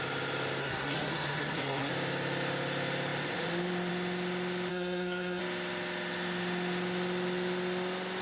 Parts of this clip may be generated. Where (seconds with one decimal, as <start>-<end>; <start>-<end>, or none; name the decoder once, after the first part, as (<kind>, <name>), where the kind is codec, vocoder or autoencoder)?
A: 0.6-1.9 (codec, SNAC); 4.7-5.4